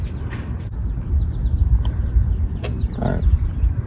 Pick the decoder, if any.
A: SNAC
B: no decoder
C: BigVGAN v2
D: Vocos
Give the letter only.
B